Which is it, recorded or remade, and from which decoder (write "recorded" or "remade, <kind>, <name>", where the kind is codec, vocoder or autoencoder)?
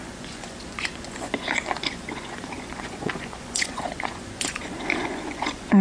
remade, vocoder, Vocos